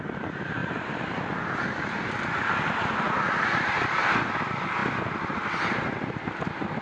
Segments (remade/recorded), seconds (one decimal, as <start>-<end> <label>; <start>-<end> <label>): 0.0-0.6 recorded; 0.6-1.5 remade; 1.5-6.8 recorded